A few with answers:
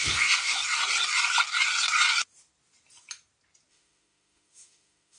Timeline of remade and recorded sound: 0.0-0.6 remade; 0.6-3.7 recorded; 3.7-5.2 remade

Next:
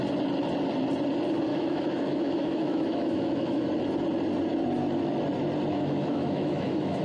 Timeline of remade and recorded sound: 0.0-1.5 recorded; 1.5-3.7 remade; 3.7-5.7 recorded; 5.7-7.0 remade

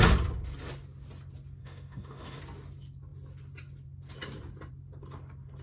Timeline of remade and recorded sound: 0.0-1.6 recorded; 1.6-2.4 remade; 2.4-5.6 recorded

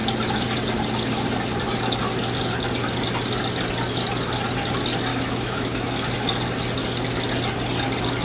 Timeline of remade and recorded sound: 0.0-5.1 recorded; 5.1-5.9 remade; 5.9-8.2 recorded

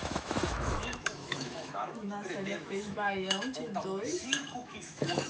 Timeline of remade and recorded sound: 0.0-5.3 remade

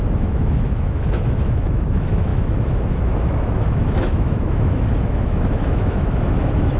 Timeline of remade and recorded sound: 0.0-6.8 remade

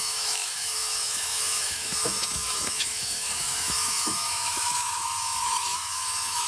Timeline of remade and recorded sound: 0.0-6.5 remade